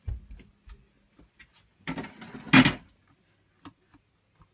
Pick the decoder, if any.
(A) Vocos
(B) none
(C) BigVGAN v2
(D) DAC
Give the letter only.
B